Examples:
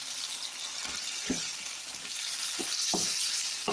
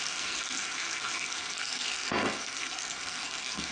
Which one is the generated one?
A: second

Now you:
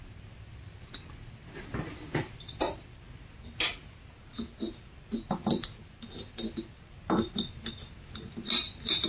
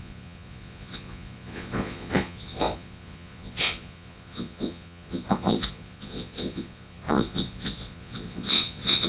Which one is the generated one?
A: second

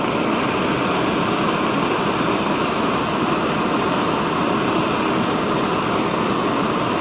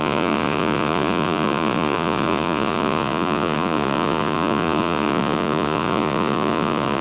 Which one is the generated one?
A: second